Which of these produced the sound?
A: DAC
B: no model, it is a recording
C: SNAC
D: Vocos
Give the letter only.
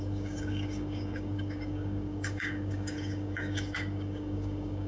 A